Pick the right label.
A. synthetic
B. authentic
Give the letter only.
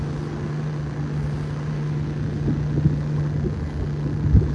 B